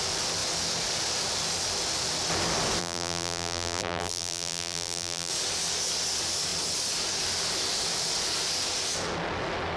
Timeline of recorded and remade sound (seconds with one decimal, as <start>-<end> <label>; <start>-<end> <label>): 0.0-2.8 recorded; 2.8-5.3 remade; 5.3-9.8 recorded